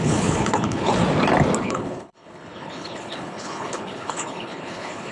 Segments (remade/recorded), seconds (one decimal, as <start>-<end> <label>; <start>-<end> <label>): 0.0-1.0 remade; 1.0-1.6 recorded; 1.6-5.1 remade